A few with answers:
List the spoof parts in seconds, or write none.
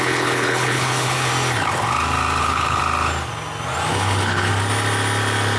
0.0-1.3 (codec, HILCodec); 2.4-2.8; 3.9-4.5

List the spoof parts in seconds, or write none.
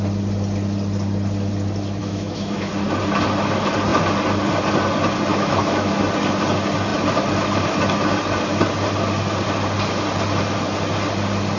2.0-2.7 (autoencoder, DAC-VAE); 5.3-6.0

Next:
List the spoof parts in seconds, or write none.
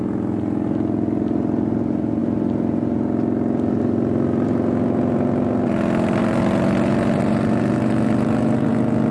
none